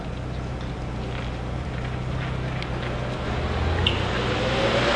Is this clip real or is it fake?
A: real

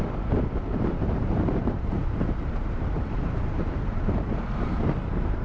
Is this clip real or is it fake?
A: fake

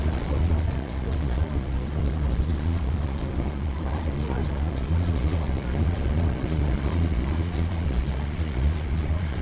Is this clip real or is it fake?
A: fake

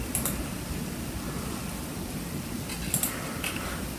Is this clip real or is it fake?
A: real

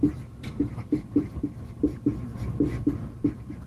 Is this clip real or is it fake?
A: fake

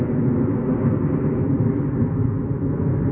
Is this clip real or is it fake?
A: real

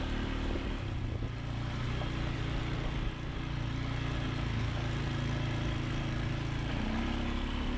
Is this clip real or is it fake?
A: real